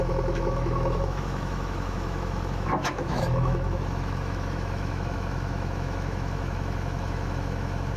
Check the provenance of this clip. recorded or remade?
remade